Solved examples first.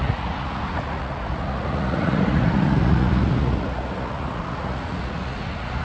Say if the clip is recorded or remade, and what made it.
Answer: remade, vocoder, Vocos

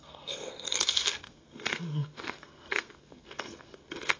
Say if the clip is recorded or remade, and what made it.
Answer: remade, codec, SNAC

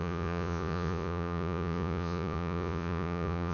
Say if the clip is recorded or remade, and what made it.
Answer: remade, vocoder, Vocos